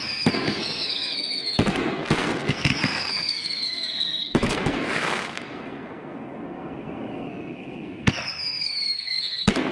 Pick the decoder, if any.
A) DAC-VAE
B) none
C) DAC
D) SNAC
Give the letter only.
D